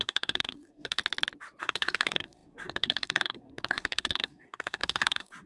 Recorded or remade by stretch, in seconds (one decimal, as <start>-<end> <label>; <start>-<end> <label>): 0.0-1.0 remade; 1.0-1.6 recorded; 1.6-5.5 remade